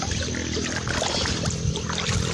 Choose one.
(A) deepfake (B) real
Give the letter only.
B